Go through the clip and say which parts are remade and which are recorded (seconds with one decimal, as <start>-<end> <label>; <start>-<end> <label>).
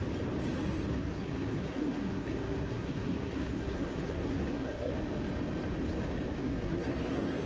0.0-0.9 recorded; 0.9-4.9 remade; 4.9-6.4 recorded; 6.4-7.5 remade